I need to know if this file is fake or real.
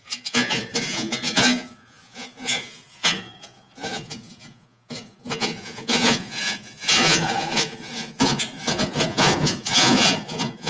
fake